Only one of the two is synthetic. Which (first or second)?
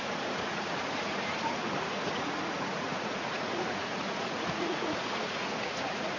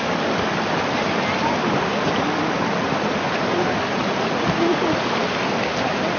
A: first